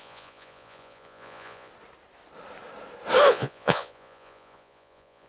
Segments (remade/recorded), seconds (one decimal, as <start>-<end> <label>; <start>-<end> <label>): 0.0-1.7 remade; 1.7-3.3 recorded; 3.3-5.3 remade

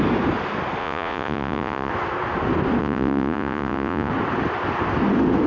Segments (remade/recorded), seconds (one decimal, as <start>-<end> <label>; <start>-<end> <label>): 0.0-0.8 recorded; 0.8-1.9 remade; 1.9-2.8 recorded; 2.8-4.1 remade; 4.1-5.5 recorded